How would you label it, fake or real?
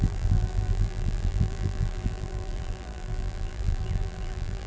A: fake